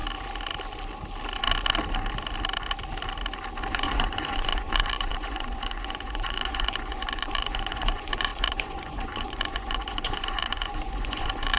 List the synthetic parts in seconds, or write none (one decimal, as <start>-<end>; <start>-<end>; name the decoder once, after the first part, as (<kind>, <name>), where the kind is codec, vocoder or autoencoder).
3.7-11.6 (vocoder, Vocos)